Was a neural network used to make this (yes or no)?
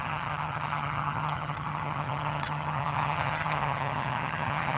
yes